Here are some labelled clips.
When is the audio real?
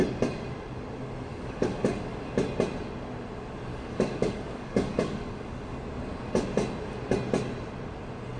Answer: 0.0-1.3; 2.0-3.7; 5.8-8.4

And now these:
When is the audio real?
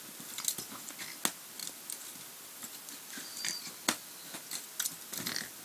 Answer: 0.0-5.6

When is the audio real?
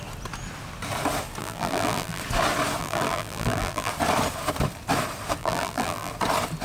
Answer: 0.0-1.4; 2.2-2.8; 3.9-5.4; 6.1-6.6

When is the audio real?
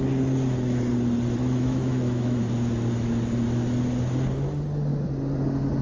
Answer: 0.0-1.4; 2.4-5.8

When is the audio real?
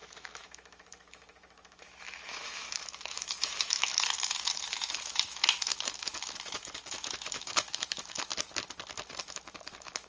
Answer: 8.3-9.2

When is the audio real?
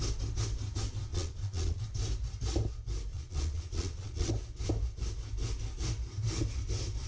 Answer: 0.0-1.1; 1.8-3.1; 4.3-7.1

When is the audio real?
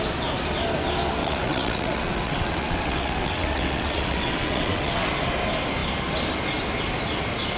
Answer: 0.0-1.2; 5.1-7.6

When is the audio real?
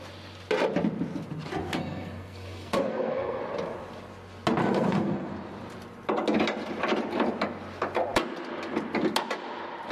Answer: 0.0-1.6; 3.4-4.6; 5.3-9.9